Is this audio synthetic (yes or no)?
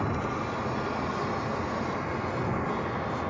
no